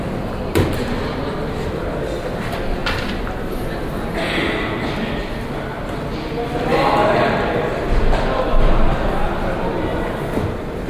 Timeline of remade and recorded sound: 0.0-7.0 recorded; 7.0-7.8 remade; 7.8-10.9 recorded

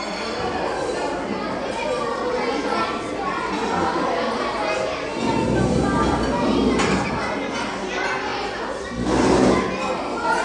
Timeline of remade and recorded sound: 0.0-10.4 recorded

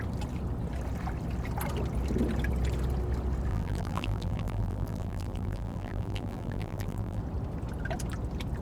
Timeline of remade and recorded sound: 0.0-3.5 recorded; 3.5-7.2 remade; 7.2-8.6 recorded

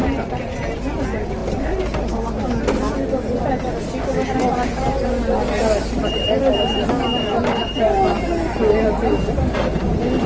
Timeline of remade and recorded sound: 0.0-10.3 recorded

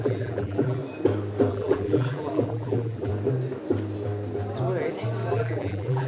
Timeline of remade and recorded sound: 0.0-0.8 remade; 0.8-1.5 recorded; 1.5-3.1 remade; 3.1-5.3 recorded; 5.3-6.1 remade

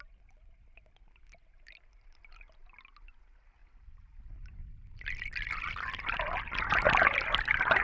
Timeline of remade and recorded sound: 0.0-7.8 recorded